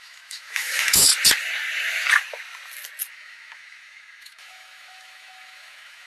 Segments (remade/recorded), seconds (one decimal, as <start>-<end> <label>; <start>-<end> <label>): 0.0-1.1 remade; 1.1-3.1 recorded; 3.1-6.1 remade

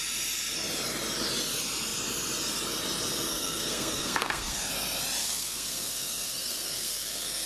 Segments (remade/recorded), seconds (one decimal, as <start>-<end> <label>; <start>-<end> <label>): 0.0-3.3 recorded; 3.3-4.7 remade; 4.7-5.2 recorded; 5.2-7.5 remade

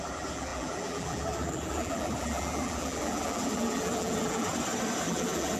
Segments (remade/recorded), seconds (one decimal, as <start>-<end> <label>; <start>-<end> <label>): 0.0-4.5 remade; 4.5-5.0 recorded; 5.0-5.6 remade

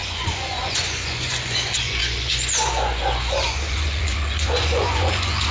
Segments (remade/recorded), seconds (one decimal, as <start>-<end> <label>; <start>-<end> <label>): 0.0-5.5 remade